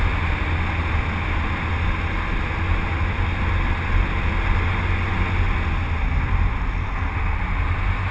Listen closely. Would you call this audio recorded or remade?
recorded